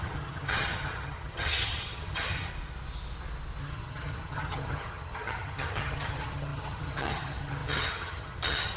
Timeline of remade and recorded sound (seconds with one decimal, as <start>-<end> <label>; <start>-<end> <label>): 0.0-2.5 remade; 2.5-3.6 recorded; 3.6-8.8 remade

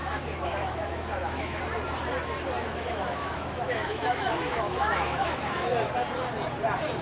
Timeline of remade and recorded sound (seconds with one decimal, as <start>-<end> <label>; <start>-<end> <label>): 0.0-1.6 remade; 1.6-2.6 recorded; 2.6-5.7 remade; 5.7-7.0 recorded

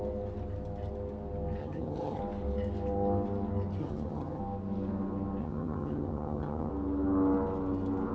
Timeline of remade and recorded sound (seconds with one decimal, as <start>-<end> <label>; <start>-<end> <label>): 0.0-1.6 recorded; 1.6-2.2 remade; 2.2-3.8 recorded; 3.8-4.4 remade; 4.4-5.4 recorded; 5.4-6.7 remade; 6.7-8.1 recorded